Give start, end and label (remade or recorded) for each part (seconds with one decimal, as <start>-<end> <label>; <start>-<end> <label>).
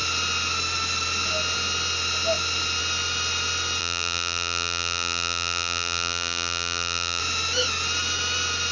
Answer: 0.0-3.8 recorded; 3.8-7.2 remade; 7.2-8.7 recorded